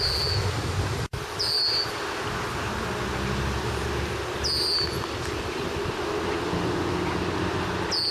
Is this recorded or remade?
recorded